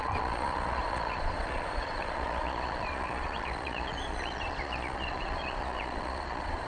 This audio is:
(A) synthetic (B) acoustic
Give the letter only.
A